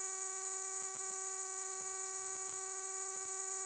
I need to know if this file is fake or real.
fake